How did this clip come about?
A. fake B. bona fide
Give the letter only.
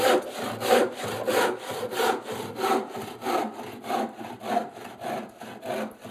B